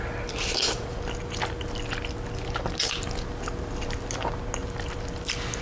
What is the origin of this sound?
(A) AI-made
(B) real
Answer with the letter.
B